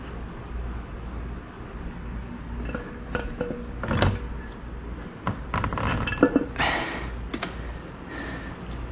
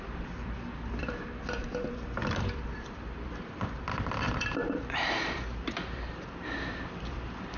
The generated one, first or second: second